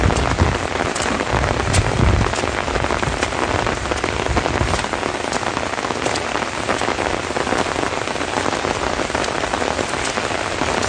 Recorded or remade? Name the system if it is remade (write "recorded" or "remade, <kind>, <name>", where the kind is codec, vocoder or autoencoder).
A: recorded